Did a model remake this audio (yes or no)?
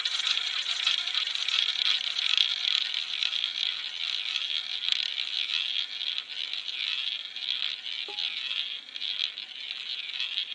no